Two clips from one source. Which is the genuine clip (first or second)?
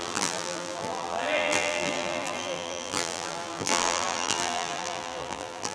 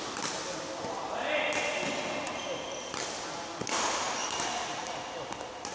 second